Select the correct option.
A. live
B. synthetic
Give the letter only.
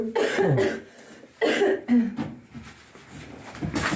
A